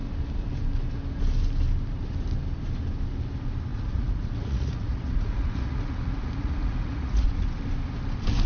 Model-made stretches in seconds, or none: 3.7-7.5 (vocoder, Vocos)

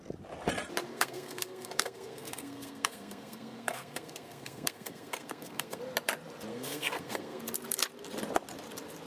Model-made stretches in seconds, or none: 0.9-5.8 (codec, SNAC); 6.5-7.4